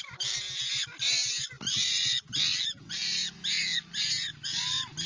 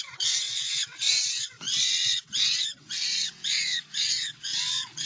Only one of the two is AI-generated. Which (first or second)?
second